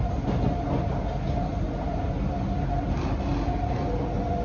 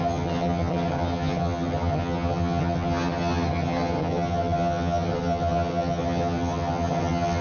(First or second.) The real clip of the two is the first